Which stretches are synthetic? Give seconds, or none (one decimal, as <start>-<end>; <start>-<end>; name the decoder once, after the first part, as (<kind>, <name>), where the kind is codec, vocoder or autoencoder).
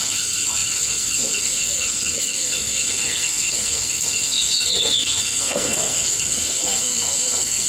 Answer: 0.0-7.7 (codec, SNAC)